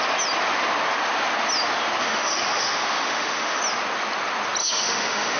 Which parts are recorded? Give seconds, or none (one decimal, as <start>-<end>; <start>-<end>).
0.0-2.0; 3.6-4.6